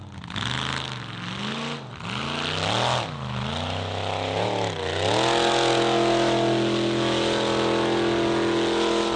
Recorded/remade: recorded